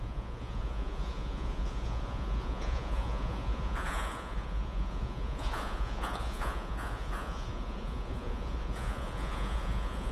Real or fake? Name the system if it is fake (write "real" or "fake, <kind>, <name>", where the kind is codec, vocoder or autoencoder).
fake, vocoder, Vocos